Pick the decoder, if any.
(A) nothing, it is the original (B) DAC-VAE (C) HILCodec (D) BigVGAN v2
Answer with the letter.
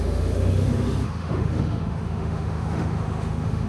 B